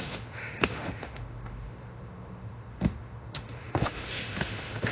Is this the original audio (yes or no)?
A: no